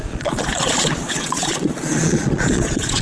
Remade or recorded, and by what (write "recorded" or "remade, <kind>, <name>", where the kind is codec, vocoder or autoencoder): remade, vocoder, Vocos